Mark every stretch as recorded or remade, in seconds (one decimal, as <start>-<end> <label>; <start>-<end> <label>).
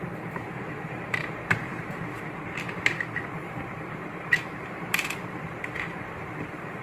0.0-1.7 remade; 1.7-3.3 recorded; 3.3-6.8 remade